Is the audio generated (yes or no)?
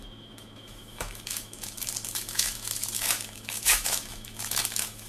yes